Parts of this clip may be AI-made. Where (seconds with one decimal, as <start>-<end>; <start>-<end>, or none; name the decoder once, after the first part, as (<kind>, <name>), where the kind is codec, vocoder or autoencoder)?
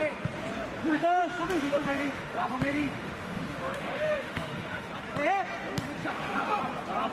0.8-4.9 (autoencoder, DAC-VAE); 6.0-6.6